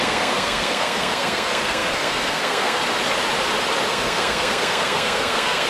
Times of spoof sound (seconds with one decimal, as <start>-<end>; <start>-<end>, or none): 0.0-2.8; 3.9-5.7